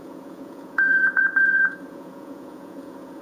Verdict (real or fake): fake